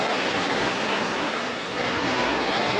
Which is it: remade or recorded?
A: remade